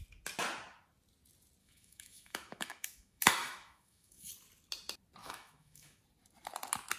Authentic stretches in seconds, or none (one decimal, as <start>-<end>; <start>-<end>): 0.0-1.6; 4.3-5.2; 6.0-7.0